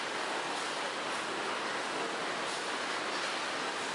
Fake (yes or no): no